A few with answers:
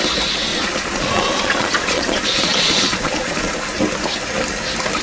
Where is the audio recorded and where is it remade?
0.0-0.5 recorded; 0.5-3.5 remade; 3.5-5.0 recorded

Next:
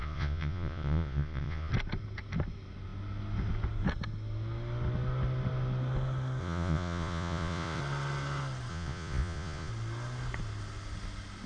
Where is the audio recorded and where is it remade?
0.0-1.7 remade; 1.7-6.4 recorded; 6.4-7.8 remade; 7.8-8.7 recorded; 8.7-9.7 remade; 9.7-11.5 recorded

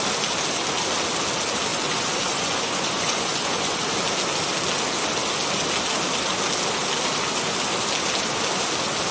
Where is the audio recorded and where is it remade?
0.0-1.7 recorded; 1.7-3.8 remade; 3.8-9.1 recorded

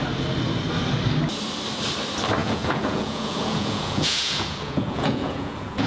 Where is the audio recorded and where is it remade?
0.0-2.4 recorded; 2.4-5.9 remade

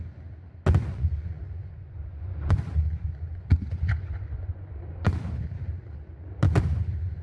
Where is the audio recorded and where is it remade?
0.0-0.9 recorded; 0.9-5.2 remade; 5.2-7.2 recorded

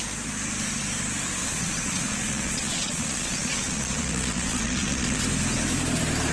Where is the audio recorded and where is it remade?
0.0-1.4 recorded; 1.4-5.2 remade; 5.2-6.3 recorded

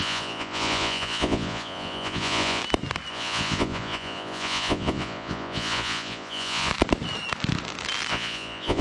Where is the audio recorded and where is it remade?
0.0-2.6 remade; 2.6-3.1 recorded; 3.1-6.7 remade; 6.7-8.1 recorded; 8.1-8.8 remade